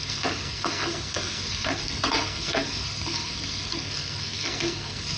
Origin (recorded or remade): remade